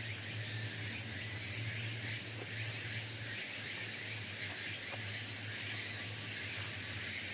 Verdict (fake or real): real